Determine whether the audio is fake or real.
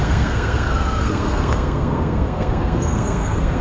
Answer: fake